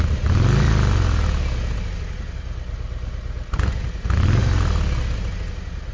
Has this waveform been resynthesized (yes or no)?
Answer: no